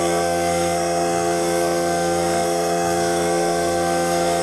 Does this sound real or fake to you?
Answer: fake